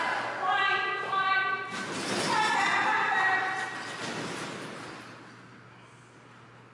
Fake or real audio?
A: real